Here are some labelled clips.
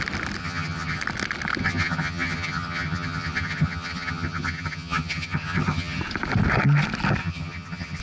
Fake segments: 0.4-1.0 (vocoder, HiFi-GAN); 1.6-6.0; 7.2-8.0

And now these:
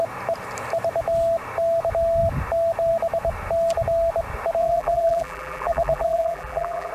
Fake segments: 4.6-6.9 (vocoder, BigVGAN v2)

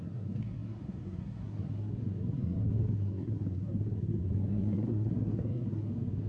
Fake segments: 0.0-6.3 (codec, SNAC)

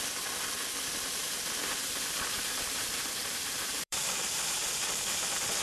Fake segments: 1.2-4.6 (vocoder, BigVGAN v2)

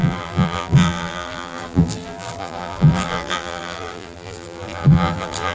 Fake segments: 0.0-5.5 (vocoder, BigVGAN v2)

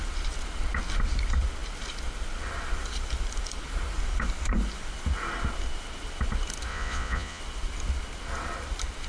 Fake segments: 6.7-7.4 (vocoder, Vocos)

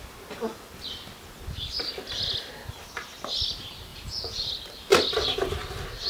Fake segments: 3.9-4.5 (vocoder, Vocos)